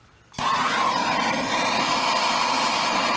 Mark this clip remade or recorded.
recorded